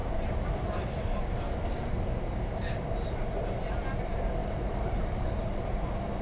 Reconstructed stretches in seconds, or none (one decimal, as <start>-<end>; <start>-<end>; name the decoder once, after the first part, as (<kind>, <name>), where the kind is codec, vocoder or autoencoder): 0.0-3.5 (vocoder, BigVGAN v2); 4.4-5.2